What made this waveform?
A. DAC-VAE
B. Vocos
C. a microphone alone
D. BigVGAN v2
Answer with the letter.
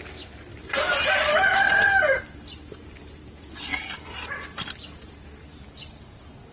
D